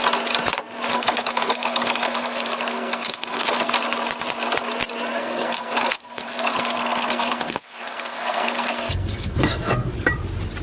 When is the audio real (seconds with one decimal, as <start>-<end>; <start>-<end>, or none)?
0.0-0.9; 3.7-5.2; 9.9-10.6